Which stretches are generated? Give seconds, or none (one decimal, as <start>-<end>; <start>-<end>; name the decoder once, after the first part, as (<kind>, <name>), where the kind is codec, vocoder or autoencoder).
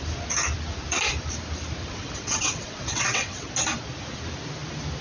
1.8-3.5 (vocoder, WaveNeXt)